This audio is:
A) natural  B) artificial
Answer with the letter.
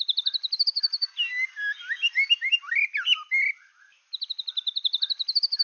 A